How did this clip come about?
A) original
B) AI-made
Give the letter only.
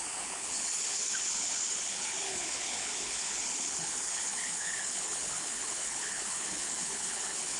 B